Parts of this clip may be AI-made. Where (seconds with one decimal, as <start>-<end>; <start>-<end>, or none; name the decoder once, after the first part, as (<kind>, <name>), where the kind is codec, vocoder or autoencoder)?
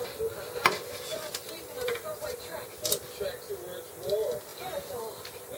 1.1-2.7 (vocoder, BigVGAN v2); 4.5-5.6